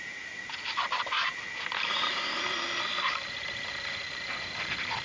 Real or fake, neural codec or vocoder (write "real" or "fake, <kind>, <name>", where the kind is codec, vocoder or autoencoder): real